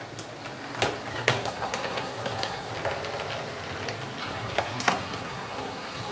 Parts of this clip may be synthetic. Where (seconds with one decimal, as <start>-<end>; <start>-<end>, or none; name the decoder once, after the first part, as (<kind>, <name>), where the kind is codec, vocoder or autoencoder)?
1.1-2.7 (codec, SNAC); 4.2-6.1

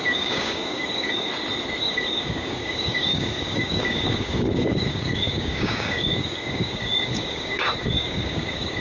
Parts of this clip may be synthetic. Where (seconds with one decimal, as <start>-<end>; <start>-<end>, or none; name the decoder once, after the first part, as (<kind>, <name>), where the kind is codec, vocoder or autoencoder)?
0.0-1.3 (codec, DAC); 1.8-8.8

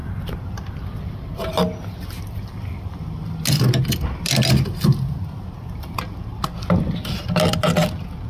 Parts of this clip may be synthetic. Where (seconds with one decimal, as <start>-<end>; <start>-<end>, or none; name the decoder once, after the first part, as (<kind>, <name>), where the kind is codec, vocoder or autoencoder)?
0.0-0.9 (vocoder, BigVGAN v2)

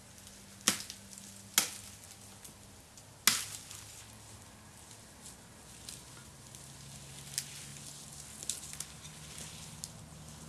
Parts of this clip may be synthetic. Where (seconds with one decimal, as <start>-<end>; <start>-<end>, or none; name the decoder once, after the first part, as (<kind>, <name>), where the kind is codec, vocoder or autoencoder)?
none

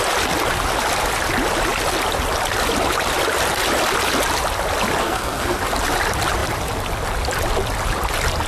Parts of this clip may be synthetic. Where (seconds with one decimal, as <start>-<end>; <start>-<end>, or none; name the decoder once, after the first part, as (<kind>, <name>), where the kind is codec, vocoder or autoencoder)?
5.0-5.6 (codec, SNAC)